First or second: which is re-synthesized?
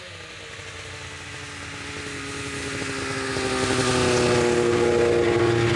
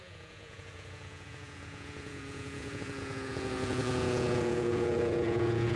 second